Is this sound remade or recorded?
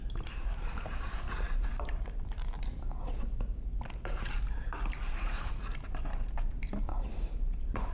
remade